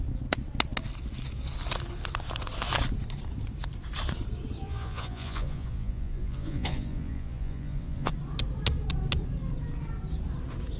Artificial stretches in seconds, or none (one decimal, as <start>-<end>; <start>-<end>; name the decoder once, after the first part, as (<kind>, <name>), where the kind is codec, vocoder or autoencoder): 4.6-8.1 (vocoder, Vocos)